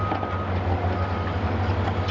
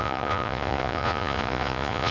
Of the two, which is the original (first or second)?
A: first